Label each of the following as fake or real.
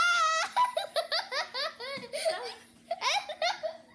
real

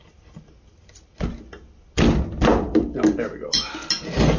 real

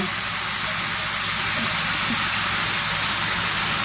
real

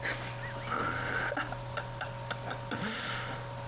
real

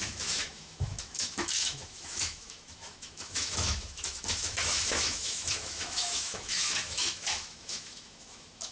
fake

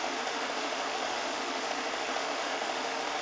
fake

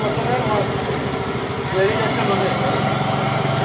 real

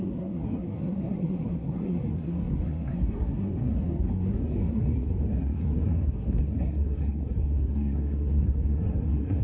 fake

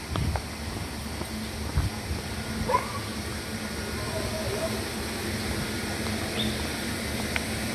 real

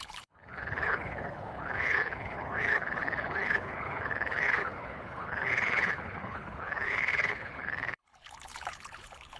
fake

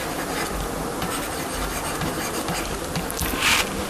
real